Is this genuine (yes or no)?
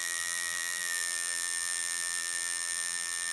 no